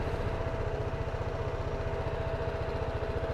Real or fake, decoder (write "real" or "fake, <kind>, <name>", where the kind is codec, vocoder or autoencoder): real